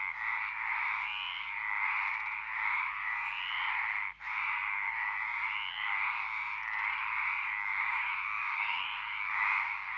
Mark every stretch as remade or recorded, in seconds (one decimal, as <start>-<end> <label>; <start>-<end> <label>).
0.0-8.4 recorded; 8.4-8.9 remade; 8.9-10.0 recorded